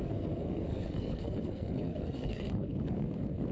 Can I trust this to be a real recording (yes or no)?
no